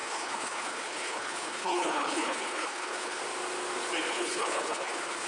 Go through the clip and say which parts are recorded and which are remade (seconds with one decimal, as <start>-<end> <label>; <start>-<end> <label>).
0.0-3.2 remade; 3.2-4.1 recorded; 4.1-5.3 remade